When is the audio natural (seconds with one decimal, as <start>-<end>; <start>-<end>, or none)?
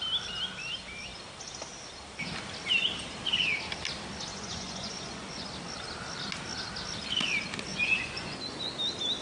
0.0-4.3; 5.5-7.7; 8.7-9.2